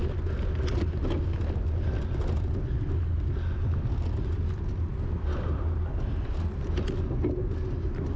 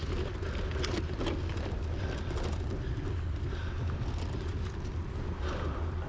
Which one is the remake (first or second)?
second